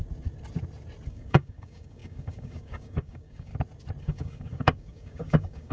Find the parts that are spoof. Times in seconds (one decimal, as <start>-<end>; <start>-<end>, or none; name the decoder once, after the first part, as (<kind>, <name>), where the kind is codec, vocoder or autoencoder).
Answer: 1.1-3.5 (codec, DAC); 4.0-5.7